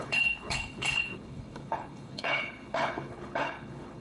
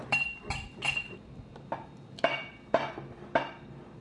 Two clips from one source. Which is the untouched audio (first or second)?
second